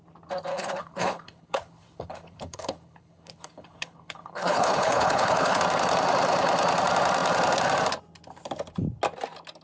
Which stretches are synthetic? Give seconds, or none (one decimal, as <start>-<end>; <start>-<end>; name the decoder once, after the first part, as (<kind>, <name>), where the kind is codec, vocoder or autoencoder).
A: 0.5-5.6 (codec, HILCodec)